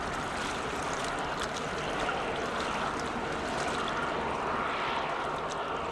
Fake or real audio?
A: real